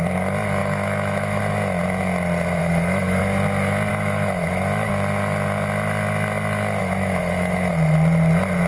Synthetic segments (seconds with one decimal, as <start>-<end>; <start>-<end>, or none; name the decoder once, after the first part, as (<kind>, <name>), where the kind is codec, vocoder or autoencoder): 0.6-1.4 (autoencoder, DAC-VAE); 2.6-3.2; 3.9-4.9; 6.8-7.7